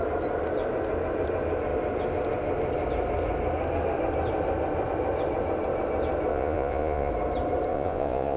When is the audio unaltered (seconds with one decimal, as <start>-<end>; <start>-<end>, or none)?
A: 0.0-6.3; 7.1-7.7